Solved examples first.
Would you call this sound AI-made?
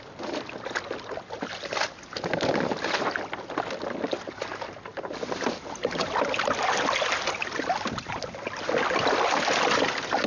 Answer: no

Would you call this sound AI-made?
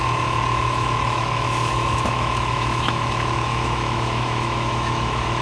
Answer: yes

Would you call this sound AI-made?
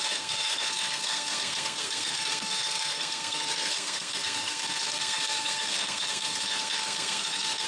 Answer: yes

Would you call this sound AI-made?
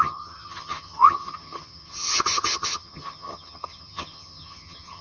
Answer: yes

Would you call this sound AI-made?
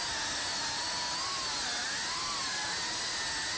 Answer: no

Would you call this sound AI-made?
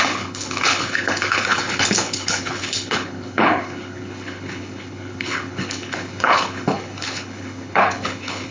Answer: yes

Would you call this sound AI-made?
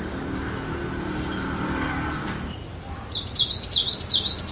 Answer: no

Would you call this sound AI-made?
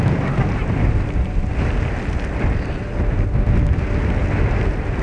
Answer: no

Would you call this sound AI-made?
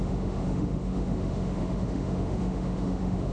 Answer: yes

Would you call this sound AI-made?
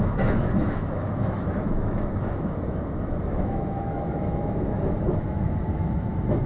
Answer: yes